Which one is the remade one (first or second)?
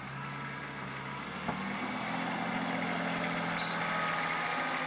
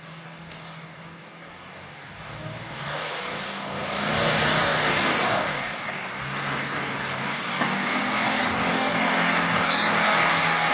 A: second